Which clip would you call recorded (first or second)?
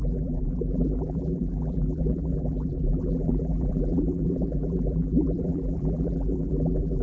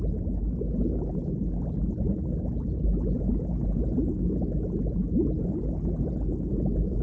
second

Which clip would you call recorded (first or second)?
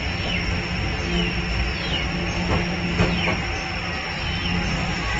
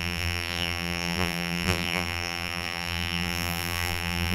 first